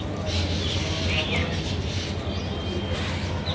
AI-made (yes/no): no